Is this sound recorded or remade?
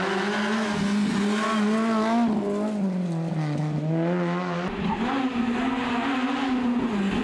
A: recorded